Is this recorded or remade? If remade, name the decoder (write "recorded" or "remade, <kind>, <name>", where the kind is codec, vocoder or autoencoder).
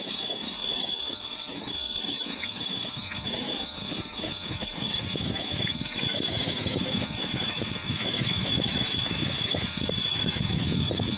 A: remade, autoencoder, DAC-VAE